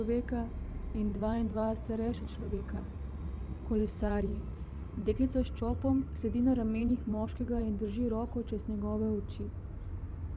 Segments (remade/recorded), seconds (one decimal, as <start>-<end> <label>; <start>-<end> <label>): 0.0-1.1 recorded; 1.1-6.2 remade; 6.2-6.8 recorded; 6.8-7.6 remade; 7.6-10.4 recorded